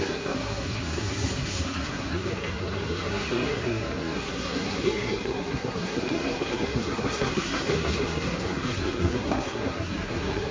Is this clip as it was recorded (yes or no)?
no